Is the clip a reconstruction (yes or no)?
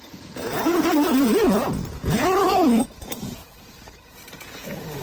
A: yes